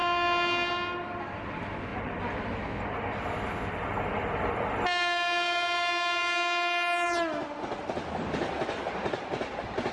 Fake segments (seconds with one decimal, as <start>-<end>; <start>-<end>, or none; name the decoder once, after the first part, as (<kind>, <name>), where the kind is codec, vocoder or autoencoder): none